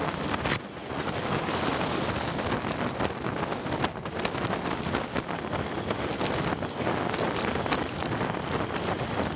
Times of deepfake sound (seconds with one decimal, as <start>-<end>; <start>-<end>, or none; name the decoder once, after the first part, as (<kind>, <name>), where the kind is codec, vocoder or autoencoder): 0.5-1.1 (vocoder, Vocos)